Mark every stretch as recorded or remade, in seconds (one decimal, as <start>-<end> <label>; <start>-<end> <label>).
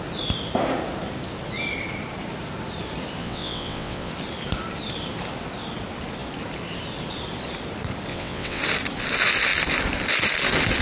0.0-3.2 recorded; 3.2-4.1 remade; 4.1-8.1 recorded; 8.1-8.6 remade; 8.6-10.8 recorded